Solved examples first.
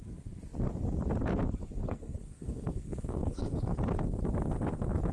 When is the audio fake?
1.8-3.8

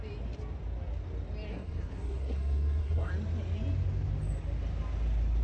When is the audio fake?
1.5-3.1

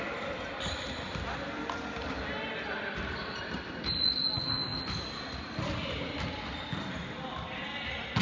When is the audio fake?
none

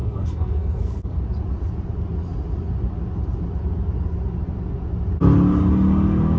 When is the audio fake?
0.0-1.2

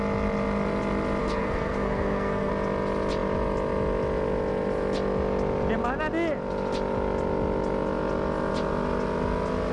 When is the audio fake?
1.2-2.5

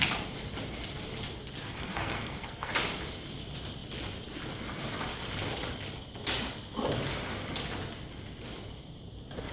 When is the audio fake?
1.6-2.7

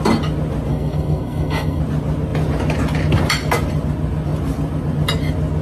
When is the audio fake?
0.7-1.8

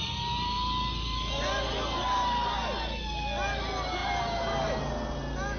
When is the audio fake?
none